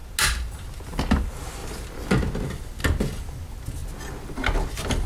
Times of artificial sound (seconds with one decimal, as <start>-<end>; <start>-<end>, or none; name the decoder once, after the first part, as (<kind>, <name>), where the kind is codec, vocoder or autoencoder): none